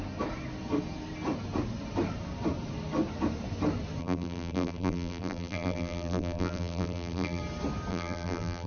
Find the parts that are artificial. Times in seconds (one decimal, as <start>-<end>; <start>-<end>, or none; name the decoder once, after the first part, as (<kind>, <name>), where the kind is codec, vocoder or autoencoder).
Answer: 4.0-7.4 (vocoder, BigVGAN v2); 7.9-8.7